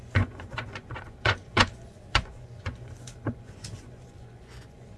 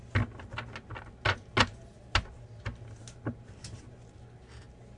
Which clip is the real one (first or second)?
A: second